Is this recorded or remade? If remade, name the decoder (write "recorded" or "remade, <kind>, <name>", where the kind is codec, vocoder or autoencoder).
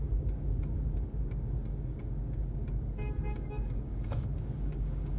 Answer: remade, codec, DAC